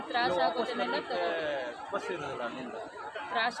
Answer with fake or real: real